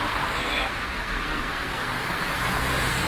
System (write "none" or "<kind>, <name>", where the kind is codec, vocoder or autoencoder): codec, SNAC